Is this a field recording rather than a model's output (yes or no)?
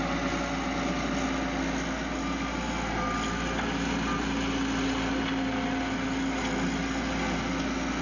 yes